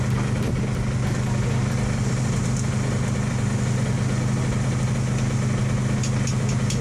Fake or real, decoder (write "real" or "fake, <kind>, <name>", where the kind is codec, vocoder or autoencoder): real